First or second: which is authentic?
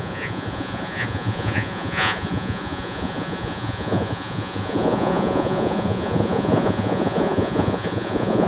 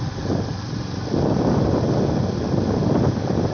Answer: second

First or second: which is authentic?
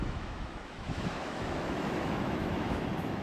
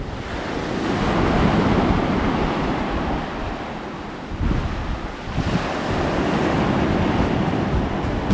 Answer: second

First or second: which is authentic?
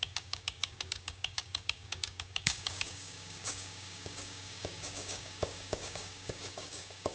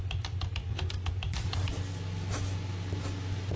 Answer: second